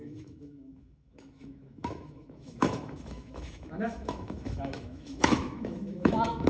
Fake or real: fake